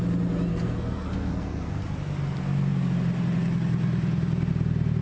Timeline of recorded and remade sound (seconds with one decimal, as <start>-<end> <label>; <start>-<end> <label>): 0.0-0.5 recorded; 0.5-1.8 remade; 1.8-5.0 recorded